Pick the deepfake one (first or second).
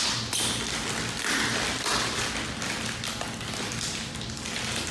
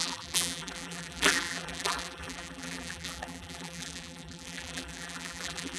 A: second